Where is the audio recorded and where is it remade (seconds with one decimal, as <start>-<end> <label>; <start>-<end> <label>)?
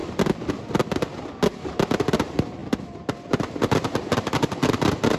0.0-2.6 recorded; 2.6-5.2 remade